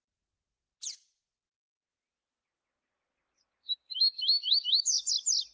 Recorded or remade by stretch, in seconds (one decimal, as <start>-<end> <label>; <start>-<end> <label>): 0.0-2.4 recorded; 2.4-5.1 remade; 5.1-5.5 recorded

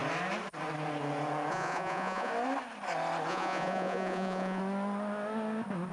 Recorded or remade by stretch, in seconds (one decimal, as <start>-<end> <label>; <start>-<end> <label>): 0.0-1.5 recorded; 1.5-2.3 remade; 2.3-3.3 recorded; 3.3-4.6 remade; 4.6-5.9 recorded

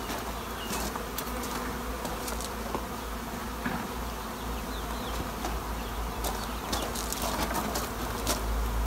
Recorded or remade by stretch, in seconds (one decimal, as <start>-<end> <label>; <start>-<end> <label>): 0.0-8.9 recorded

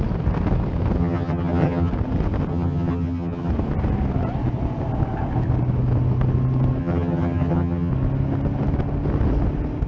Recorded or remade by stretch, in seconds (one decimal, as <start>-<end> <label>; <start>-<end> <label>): 0.0-1.0 recorded; 1.0-1.9 remade; 1.9-2.5 recorded; 2.5-3.5 remade; 3.5-6.8 recorded; 6.8-7.9 remade; 7.9-9.9 recorded

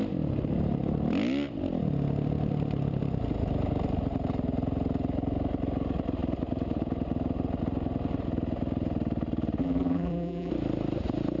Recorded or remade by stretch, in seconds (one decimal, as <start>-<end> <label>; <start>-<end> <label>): 0.0-9.6 recorded; 9.6-10.5 remade; 10.5-11.4 recorded

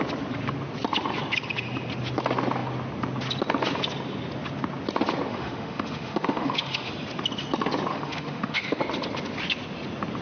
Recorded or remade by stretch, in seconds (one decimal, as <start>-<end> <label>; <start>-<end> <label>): 0.0-5.3 recorded; 5.3-6.9 remade; 6.9-7.9 recorded; 7.9-8.8 remade; 8.8-10.2 recorded

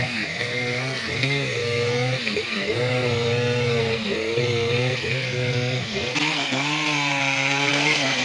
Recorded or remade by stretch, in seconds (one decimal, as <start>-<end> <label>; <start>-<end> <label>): 0.0-8.2 remade